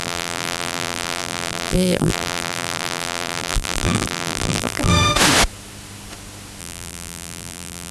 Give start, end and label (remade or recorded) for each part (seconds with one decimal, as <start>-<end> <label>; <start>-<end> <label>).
0.0-4.9 remade; 4.9-6.6 recorded; 6.6-7.9 remade